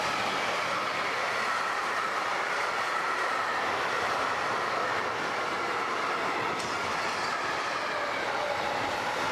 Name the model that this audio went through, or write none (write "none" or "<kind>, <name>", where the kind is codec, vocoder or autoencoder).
none